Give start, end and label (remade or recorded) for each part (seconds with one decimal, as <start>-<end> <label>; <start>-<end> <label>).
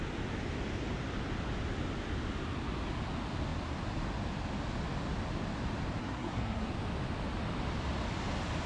0.0-6.0 recorded; 6.0-6.7 remade; 6.7-8.7 recorded